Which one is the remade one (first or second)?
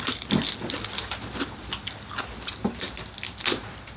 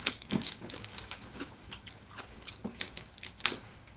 second